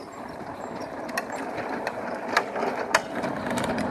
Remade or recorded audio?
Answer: remade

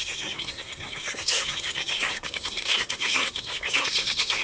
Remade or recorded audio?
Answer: remade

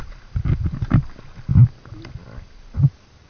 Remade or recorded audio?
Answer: recorded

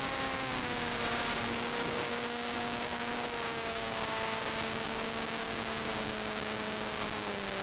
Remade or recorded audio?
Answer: remade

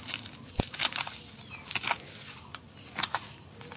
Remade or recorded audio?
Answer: recorded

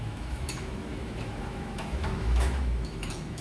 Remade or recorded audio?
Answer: remade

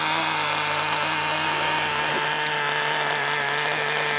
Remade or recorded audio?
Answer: recorded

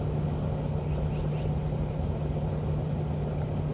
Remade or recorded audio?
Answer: recorded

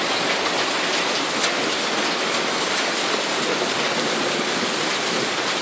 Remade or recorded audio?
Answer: recorded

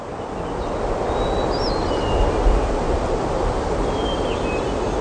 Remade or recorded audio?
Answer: recorded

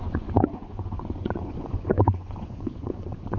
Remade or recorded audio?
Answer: remade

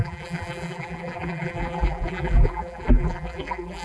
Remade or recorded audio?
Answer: remade